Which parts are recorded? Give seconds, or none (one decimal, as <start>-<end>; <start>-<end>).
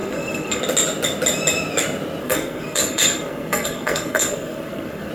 0.6-2.2